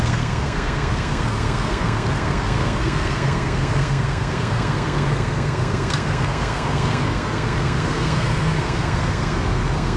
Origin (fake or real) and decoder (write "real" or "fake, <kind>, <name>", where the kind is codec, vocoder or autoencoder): fake, codec, SNAC